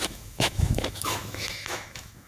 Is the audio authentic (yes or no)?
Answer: no